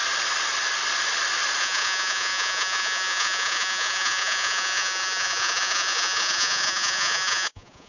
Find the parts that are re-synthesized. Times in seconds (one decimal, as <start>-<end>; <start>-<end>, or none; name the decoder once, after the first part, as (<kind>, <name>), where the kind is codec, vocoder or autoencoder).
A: 1.6-7.9 (vocoder, Vocos)

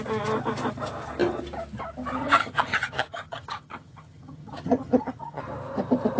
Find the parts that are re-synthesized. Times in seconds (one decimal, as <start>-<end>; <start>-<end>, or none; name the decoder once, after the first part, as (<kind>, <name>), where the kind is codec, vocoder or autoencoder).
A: 2.2-5.4 (vocoder, HiFi-GAN)

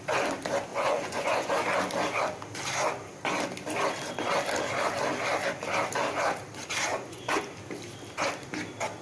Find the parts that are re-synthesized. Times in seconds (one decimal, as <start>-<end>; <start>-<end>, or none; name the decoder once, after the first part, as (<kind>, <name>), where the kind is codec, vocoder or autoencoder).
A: 0.7-1.5 (vocoder, Vocos); 6.9-7.4

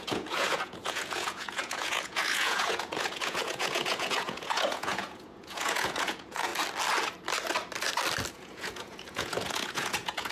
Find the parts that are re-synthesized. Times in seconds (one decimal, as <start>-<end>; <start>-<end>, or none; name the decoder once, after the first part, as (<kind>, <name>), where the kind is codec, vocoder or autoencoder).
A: 0.0-6.5 (vocoder, Vocos); 8.3-10.3

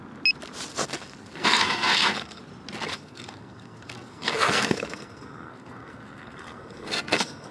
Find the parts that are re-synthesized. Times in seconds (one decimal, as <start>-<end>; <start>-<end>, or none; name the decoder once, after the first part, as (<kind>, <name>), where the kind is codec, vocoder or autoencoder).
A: 0.7-2.4 (codec, SNAC); 2.9-7.5

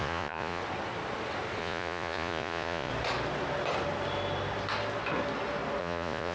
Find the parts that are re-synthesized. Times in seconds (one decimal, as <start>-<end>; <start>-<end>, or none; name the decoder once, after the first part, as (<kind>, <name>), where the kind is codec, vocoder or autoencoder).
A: 0.0-0.6 (vocoder, Vocos); 1.6-2.9; 5.8-6.3

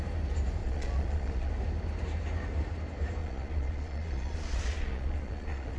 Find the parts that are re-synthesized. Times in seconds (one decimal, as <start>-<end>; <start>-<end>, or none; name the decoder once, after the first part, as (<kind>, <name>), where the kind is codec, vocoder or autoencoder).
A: 0.6-1.5 (vocoder, Vocos); 3.2-5.8